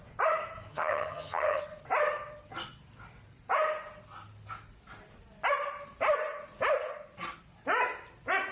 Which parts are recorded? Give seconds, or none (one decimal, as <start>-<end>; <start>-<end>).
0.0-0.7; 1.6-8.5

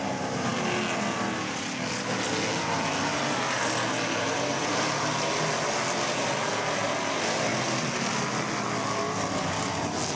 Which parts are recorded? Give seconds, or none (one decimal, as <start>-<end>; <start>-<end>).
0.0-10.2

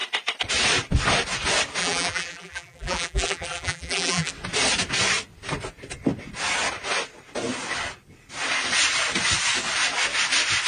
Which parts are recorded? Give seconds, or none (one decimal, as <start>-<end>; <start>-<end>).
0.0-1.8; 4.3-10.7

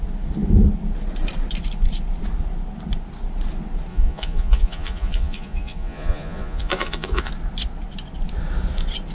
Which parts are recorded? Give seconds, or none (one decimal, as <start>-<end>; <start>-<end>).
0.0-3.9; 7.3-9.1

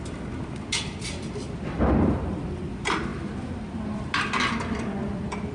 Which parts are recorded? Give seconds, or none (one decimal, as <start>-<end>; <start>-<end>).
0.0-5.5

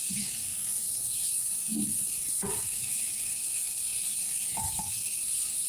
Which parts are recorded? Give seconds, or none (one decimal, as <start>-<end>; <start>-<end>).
none

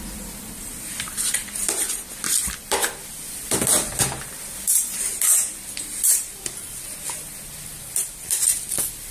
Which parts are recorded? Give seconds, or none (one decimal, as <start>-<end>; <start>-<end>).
1.4-2.2